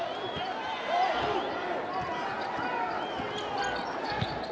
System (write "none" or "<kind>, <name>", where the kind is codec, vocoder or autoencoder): none